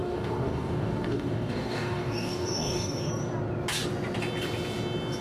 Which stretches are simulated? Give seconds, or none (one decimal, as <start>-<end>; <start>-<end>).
0.0-3.1